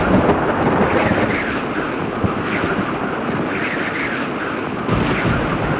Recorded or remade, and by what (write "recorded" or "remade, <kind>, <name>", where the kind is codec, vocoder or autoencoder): recorded